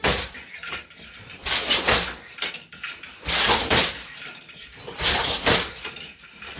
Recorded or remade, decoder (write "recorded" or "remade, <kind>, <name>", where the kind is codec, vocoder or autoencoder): recorded